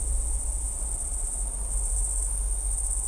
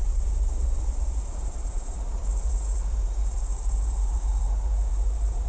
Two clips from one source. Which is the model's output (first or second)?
second